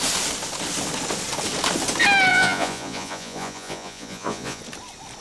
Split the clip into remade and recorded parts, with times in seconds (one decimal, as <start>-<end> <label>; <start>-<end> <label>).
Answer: 0.0-2.3 recorded; 2.3-4.6 remade; 4.6-5.2 recorded